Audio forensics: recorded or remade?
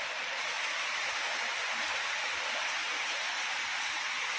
recorded